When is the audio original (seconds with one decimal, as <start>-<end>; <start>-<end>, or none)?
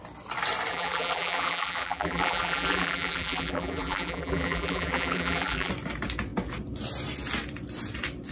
0.0-0.7; 5.7-8.3